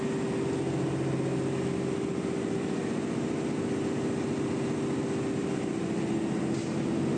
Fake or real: real